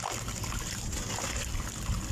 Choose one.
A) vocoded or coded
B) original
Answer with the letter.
B